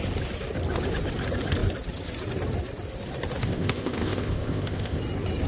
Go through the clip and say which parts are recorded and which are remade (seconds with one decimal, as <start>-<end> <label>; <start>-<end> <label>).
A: 0.0-3.4 recorded; 3.4-5.0 remade; 5.0-5.5 recorded